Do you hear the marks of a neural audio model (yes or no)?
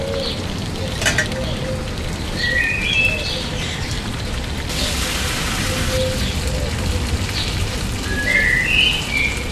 no